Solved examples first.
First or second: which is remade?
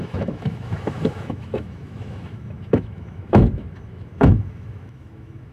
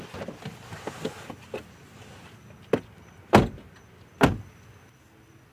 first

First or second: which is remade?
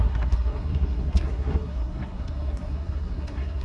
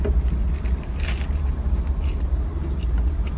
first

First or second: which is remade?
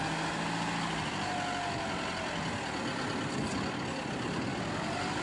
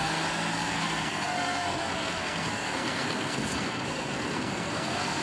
second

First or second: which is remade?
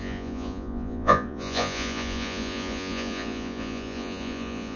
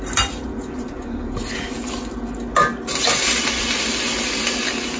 first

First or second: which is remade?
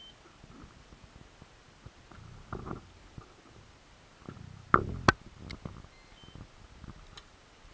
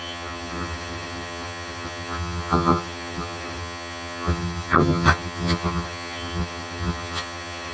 second